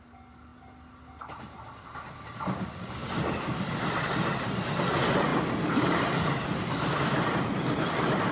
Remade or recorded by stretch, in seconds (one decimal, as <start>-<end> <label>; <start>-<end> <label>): 0.0-8.3 recorded

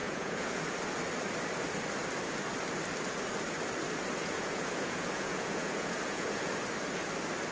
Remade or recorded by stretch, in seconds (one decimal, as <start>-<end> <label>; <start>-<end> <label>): 0.0-0.6 remade; 0.6-4.2 recorded; 4.2-6.5 remade; 6.5-7.5 recorded

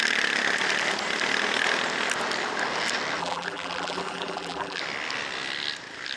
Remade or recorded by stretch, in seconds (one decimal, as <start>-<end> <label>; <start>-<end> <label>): 0.0-3.2 recorded; 3.2-4.8 remade; 4.8-6.2 recorded

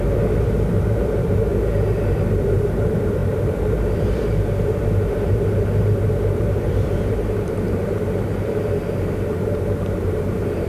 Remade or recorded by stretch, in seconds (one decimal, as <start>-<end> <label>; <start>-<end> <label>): 0.0-1.5 remade; 1.5-2.1 recorded; 2.1-10.7 remade

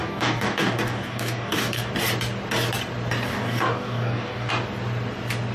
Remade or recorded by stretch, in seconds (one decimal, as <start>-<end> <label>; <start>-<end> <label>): 0.0-1.9 remade; 1.9-3.3 recorded; 3.3-4.5 remade; 4.5-5.5 recorded